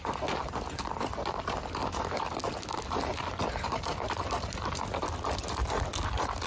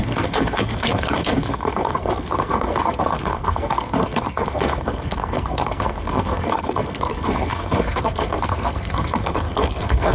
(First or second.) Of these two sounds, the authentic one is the first